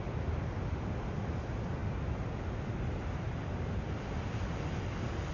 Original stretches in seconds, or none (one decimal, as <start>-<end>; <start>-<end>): 0.0-5.3